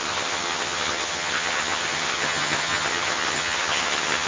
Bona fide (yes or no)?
no